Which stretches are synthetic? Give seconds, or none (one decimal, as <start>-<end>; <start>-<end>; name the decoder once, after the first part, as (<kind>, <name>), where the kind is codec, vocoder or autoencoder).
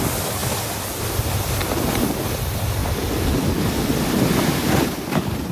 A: none